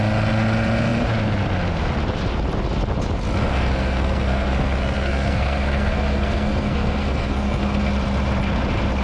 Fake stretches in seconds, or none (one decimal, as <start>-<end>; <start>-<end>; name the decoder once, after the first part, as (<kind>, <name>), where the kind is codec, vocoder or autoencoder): 3.4-7.9 (codec, SNAC)

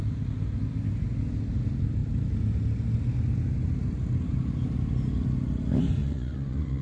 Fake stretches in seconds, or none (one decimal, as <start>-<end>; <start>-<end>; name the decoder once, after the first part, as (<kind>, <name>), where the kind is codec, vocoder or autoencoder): 6.0-6.8 (vocoder, Vocos)